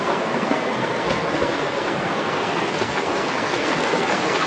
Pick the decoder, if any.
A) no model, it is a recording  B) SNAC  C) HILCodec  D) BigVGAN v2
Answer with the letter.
B